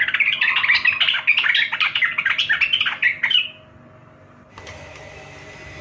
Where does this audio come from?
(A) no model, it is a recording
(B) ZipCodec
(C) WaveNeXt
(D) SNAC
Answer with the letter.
A